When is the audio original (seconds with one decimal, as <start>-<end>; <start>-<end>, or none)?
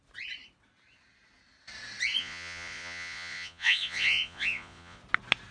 0.0-2.2; 5.0-5.5